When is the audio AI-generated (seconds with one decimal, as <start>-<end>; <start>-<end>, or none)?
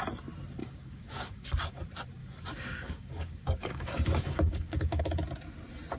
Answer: 0.6-1.8; 2.2-5.0